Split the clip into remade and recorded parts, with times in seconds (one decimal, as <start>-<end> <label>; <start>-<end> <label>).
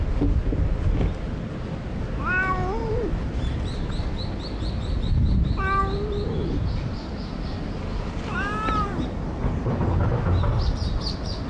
0.0-2.8 recorded; 2.8-3.9 remade; 3.9-7.9 recorded; 7.9-10.4 remade; 10.4-11.5 recorded